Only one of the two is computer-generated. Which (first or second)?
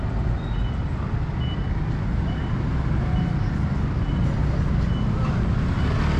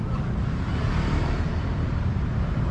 second